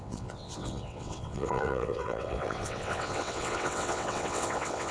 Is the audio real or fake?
fake